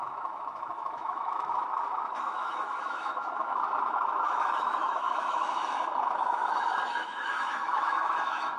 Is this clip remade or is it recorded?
remade